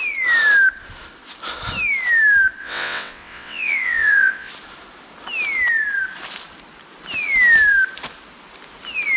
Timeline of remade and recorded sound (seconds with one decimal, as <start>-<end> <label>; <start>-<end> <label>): 0.0-2.6 recorded; 2.6-4.5 remade; 4.5-9.2 recorded